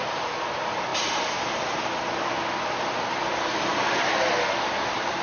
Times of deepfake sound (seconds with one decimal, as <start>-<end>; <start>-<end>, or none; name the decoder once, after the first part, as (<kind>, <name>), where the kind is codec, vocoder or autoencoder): none